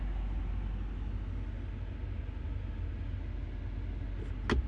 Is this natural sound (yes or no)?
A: yes